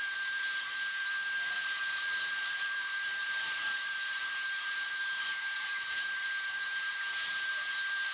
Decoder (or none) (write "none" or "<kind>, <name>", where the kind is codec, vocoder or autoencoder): vocoder, BigVGAN v2